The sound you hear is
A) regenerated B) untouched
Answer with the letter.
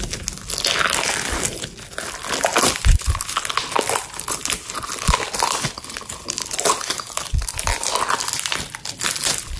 B